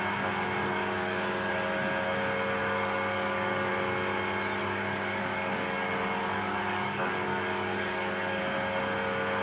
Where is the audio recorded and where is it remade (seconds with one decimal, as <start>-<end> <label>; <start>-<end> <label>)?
0.0-0.6 recorded; 0.6-1.5 remade; 1.5-2.6 recorded; 2.6-3.7 remade; 3.7-4.6 recorded; 4.6-8.4 remade; 8.4-9.4 recorded